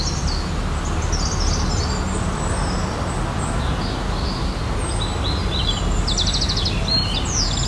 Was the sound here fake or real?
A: real